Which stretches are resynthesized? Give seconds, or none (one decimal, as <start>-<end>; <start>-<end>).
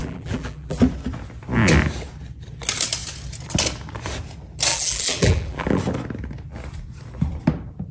0.0-0.8; 4.7-5.8